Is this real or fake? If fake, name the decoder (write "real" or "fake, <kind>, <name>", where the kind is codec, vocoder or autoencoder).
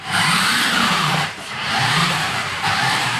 fake, vocoder, BigVGAN v2